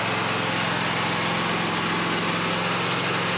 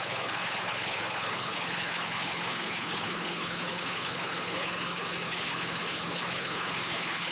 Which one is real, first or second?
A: first